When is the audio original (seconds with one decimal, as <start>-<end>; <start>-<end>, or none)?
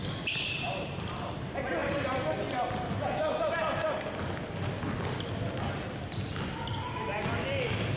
0.0-8.0